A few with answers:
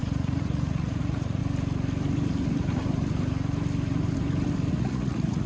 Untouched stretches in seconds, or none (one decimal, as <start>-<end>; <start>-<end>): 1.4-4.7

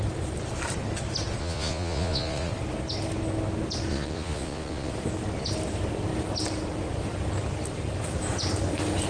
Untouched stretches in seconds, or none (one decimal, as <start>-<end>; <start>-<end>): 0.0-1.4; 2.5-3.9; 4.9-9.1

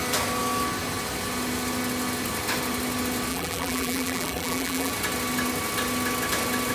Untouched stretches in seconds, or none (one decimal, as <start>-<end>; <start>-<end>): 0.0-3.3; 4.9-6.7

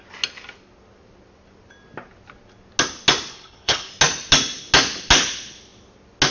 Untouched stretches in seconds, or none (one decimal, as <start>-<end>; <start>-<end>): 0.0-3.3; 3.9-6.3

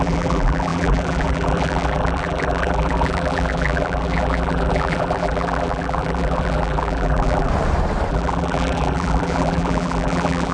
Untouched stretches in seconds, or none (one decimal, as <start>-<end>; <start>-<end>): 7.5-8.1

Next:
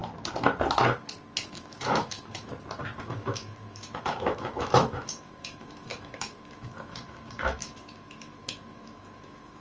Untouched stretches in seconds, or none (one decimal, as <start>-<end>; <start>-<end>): 0.0-1.4; 2.5-3.0